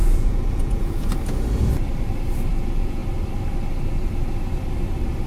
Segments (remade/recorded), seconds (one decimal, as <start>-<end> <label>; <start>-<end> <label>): 0.0-1.1 remade; 1.1-2.5 recorded; 2.5-3.0 remade; 3.0-5.3 recorded